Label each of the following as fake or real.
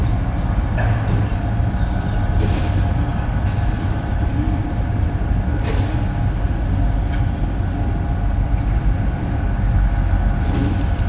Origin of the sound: real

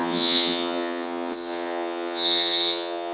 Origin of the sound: fake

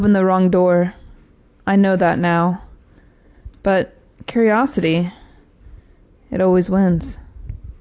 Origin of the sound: real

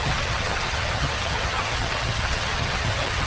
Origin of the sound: fake